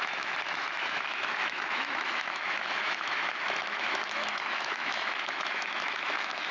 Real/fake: fake